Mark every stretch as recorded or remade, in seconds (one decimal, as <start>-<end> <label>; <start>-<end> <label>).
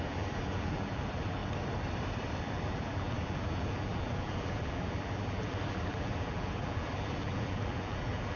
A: 0.0-1.4 remade; 1.4-2.4 recorded; 2.4-8.4 remade